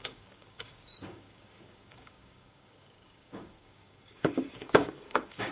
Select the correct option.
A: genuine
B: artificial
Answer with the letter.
B